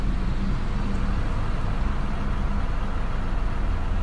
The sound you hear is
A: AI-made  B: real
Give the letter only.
B